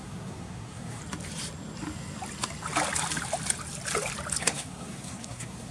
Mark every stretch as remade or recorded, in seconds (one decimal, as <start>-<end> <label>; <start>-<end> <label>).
0.0-1.0 remade; 1.0-4.4 recorded; 4.4-5.7 remade